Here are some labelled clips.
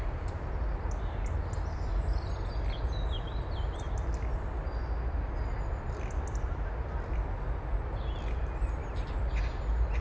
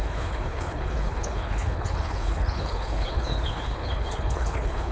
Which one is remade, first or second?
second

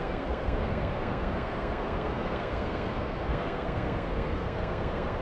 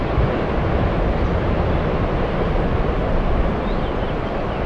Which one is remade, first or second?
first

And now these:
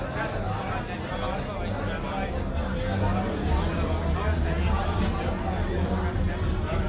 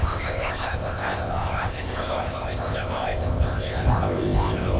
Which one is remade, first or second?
second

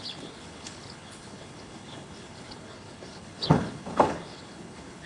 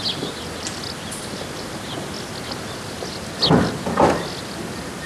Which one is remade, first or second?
first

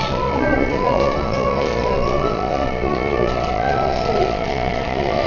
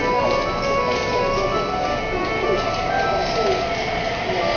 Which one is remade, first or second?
first